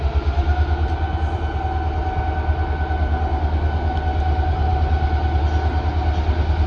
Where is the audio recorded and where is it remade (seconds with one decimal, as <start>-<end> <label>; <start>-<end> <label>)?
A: 0.0-6.7 recorded